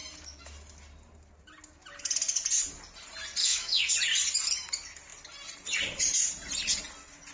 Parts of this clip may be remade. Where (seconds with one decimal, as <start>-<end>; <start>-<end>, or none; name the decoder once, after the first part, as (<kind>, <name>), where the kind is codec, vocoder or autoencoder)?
3.4-3.9 (autoencoder, DAC-VAE)